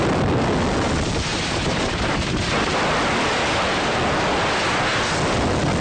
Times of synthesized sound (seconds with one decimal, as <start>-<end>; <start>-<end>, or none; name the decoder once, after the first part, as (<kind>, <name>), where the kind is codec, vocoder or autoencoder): 1.3-2.8 (vocoder, BigVGAN v2)